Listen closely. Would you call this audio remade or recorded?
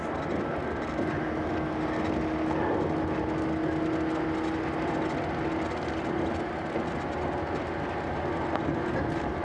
recorded